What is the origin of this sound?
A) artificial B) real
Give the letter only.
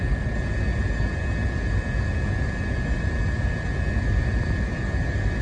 B